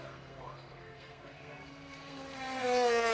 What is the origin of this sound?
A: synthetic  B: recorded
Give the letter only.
A